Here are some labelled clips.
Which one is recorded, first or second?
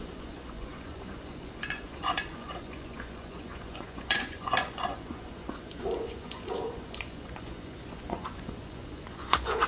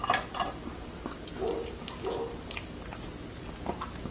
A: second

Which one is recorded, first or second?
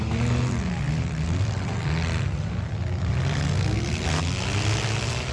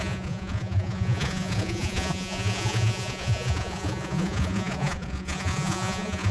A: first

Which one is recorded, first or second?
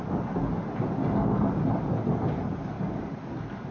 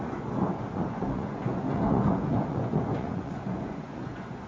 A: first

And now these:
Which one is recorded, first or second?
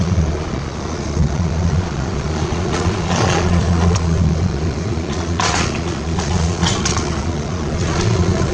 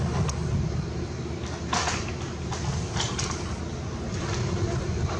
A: second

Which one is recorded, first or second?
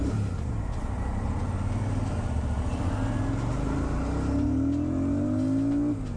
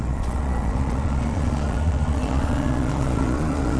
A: first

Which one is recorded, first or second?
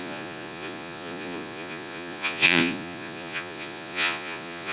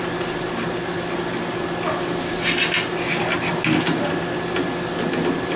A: second